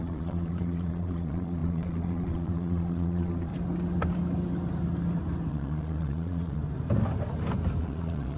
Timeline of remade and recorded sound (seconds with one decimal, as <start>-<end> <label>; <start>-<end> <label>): 0.0-3.5 remade; 3.5-5.5 recorded; 5.5-6.6 remade; 6.6-7.8 recorded; 7.8-8.4 remade

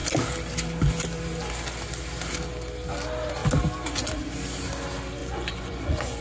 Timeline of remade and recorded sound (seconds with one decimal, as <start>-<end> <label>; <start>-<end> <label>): 0.0-5.2 recorded; 5.2-6.2 remade

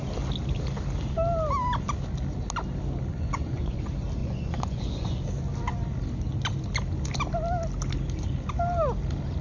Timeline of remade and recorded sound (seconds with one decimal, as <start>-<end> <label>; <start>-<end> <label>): 0.0-3.1 recorded; 3.1-3.8 remade; 3.8-4.2 recorded; 4.2-5.2 remade; 5.2-9.4 recorded

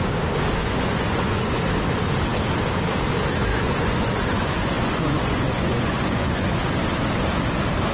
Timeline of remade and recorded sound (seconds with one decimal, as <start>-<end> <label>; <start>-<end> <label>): 0.0-0.6 recorded; 0.6-1.6 remade; 1.6-3.5 recorded; 3.5-6.6 remade; 6.6-7.9 recorded

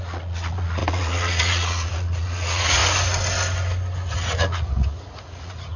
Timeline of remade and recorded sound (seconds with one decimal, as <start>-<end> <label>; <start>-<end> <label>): 0.0-2.8 remade; 2.8-4.1 recorded; 4.1-5.8 remade

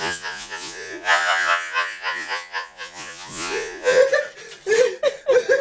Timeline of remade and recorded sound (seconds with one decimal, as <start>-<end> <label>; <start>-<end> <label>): 0.0-4.0 remade; 4.0-5.6 recorded

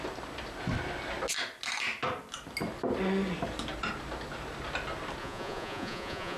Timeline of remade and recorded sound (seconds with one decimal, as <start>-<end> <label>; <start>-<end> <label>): 0.0-5.2 recorded; 5.2-6.4 remade

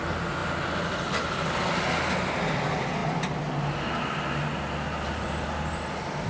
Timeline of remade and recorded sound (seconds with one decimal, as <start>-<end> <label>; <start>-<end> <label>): 0.0-6.3 recorded